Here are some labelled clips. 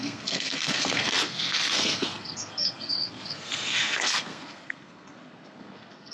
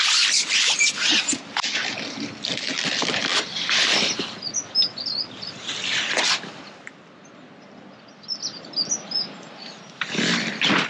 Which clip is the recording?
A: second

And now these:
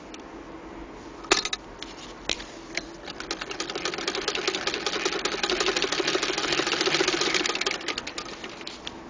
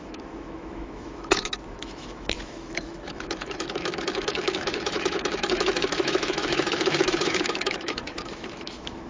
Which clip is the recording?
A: first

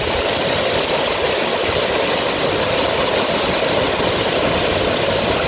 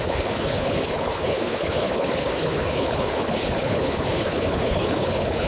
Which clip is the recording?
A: first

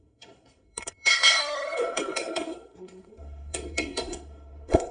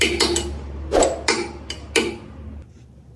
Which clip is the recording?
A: second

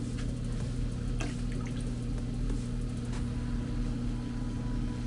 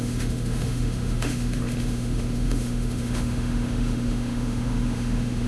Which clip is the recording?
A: first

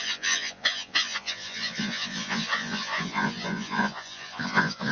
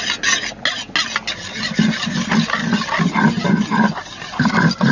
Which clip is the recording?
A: second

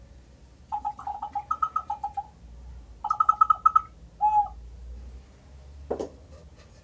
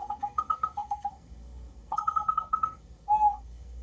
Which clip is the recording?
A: first